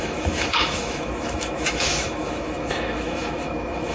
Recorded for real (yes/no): no